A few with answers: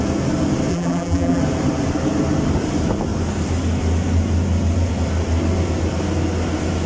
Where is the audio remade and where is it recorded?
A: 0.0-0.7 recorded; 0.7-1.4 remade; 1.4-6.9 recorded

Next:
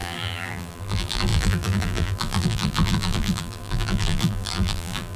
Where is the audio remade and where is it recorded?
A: 0.0-5.2 remade

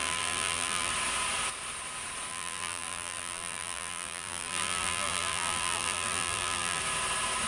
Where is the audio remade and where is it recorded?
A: 0.0-0.9 remade; 0.9-2.3 recorded; 2.3-6.8 remade; 6.8-7.5 recorded

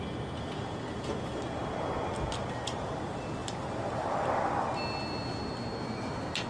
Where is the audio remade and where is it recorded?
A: 0.0-6.5 recorded

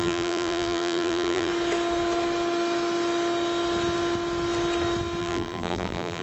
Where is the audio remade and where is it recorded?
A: 0.0-1.5 remade; 1.5-5.2 recorded; 5.2-6.2 remade

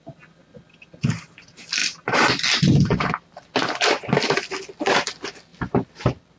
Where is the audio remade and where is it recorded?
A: 0.0-6.4 remade

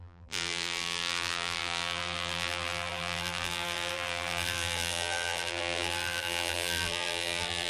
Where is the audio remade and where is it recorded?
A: 0.0-7.7 remade

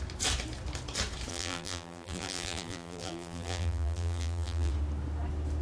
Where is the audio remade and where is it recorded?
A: 0.0-1.3 recorded; 1.3-4.7 remade; 4.7-5.6 recorded